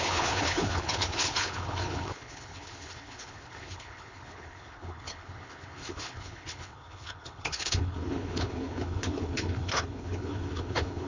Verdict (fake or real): fake